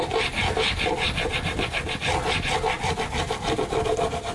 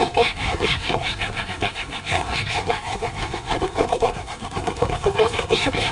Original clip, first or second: first